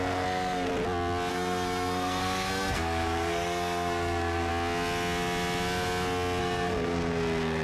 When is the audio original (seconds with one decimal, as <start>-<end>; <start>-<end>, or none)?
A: 0.7-1.3; 4.5-6.4